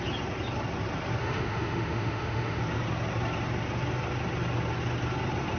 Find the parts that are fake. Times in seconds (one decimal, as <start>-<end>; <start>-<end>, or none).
1.2-2.6